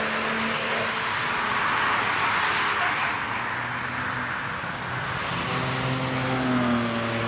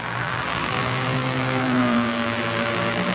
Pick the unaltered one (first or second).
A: first